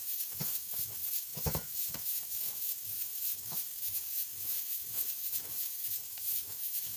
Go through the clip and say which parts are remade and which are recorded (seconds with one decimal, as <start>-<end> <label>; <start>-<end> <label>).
0.0-7.0 remade

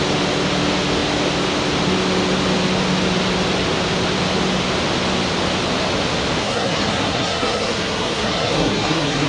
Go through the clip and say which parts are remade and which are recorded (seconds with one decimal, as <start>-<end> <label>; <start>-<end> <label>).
0.0-6.4 recorded; 6.4-9.3 remade

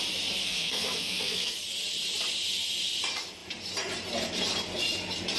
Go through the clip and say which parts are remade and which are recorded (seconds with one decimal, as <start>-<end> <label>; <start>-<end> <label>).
0.0-0.4 recorded; 0.4-1.6 remade; 1.6-5.4 recorded